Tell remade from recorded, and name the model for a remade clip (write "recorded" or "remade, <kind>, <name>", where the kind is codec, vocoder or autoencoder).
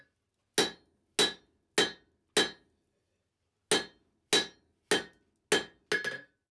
recorded